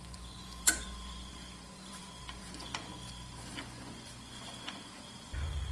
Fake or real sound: fake